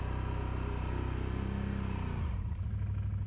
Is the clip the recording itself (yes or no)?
yes